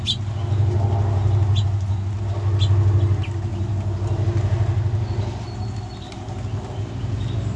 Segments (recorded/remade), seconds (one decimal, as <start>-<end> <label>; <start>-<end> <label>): 0.0-7.6 recorded